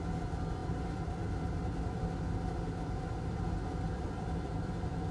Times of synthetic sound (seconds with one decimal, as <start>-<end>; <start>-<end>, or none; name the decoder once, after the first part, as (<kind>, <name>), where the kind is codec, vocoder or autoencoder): 0.0-5.1 (vocoder, BigVGAN v2)